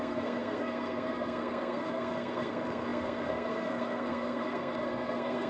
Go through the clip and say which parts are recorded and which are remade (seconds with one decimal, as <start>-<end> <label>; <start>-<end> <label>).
0.0-5.5 remade